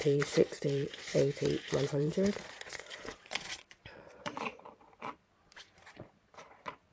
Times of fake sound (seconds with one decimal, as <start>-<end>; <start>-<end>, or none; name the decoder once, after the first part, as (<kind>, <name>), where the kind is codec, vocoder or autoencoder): 0.0-1.1 (vocoder, Vocos); 1.9-6.9